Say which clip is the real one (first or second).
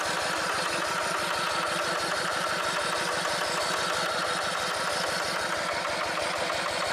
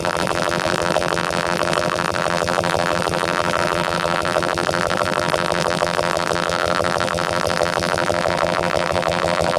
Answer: first